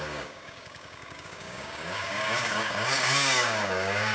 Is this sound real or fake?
fake